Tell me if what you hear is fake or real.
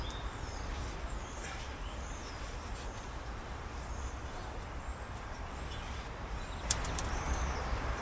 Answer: fake